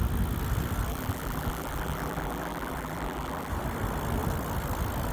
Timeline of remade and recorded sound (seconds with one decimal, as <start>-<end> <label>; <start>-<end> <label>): 0.0-0.9 recorded; 0.9-3.5 remade; 3.5-5.1 recorded